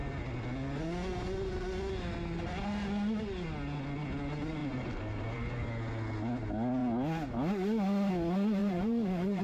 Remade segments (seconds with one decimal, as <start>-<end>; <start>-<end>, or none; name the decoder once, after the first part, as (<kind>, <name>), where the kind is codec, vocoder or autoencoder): 4.6-5.7 (vocoder, BigVGAN v2); 8.6-9.4